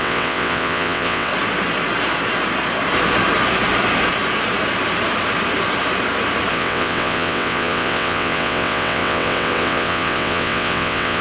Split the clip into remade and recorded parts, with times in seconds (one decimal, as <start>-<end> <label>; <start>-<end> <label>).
0.0-1.3 remade; 1.3-6.5 recorded; 6.5-11.2 remade